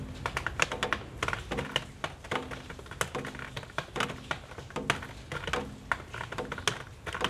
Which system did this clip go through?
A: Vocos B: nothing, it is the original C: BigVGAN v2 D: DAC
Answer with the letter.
B